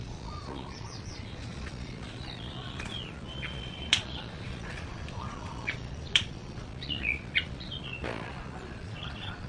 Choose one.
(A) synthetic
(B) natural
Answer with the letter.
A